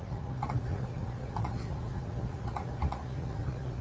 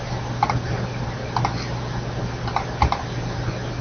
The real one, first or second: second